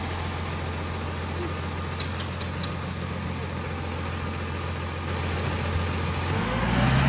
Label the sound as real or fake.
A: real